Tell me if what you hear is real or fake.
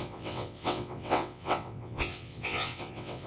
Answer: fake